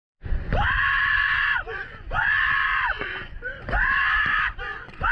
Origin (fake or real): fake